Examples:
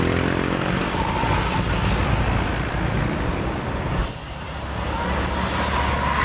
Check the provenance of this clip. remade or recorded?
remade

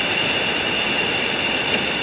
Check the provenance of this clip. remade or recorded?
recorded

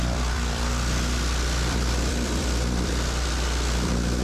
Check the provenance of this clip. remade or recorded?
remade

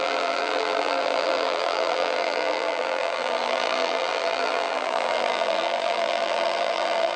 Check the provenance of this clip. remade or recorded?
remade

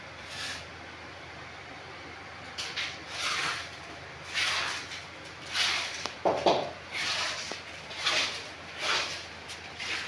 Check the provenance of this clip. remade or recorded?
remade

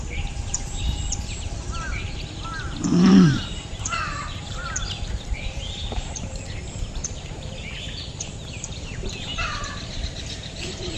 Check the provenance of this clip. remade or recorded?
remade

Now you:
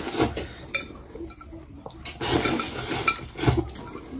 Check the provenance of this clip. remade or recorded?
recorded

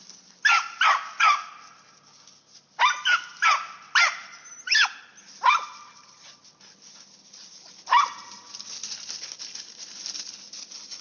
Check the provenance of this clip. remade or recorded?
recorded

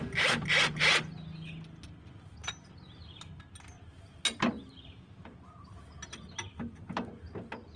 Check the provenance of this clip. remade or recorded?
recorded